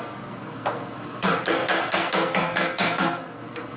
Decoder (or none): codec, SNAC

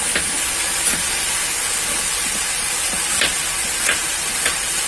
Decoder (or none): none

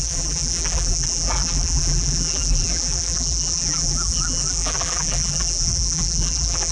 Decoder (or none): vocoder, BigVGAN v2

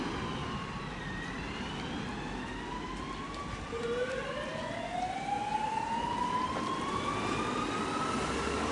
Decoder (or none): none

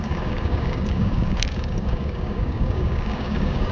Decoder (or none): codec, DAC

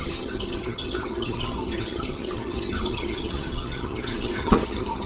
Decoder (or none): vocoder, HiFi-GAN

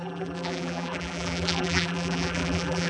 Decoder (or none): vocoder, BigVGAN v2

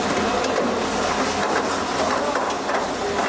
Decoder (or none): none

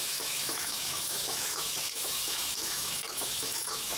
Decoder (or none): autoencoder, DAC-VAE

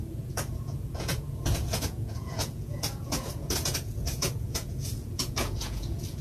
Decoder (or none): vocoder, Vocos